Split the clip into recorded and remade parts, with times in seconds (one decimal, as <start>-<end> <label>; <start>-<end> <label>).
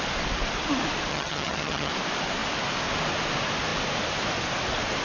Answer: 0.0-1.1 recorded; 1.1-1.9 remade; 1.9-5.0 recorded